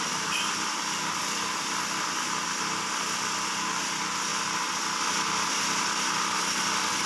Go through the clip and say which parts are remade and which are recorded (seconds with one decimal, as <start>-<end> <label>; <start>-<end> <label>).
0.0-7.1 recorded